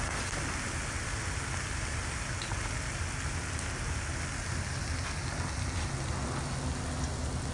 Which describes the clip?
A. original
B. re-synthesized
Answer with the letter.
A